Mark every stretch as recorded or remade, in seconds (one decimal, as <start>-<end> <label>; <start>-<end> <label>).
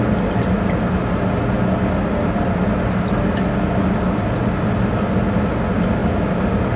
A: 0.0-6.8 recorded